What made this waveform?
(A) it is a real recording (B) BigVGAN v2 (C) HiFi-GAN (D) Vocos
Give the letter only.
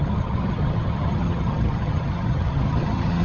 C